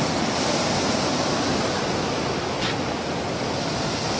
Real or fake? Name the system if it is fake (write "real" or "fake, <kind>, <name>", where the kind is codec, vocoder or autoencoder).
real